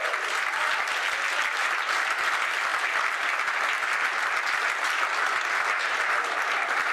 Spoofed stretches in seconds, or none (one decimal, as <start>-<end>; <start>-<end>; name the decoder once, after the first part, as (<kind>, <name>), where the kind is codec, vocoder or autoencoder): none